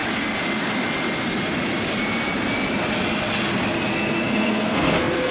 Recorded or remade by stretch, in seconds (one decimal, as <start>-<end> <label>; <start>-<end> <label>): 0.0-3.9 recorded; 3.9-5.3 remade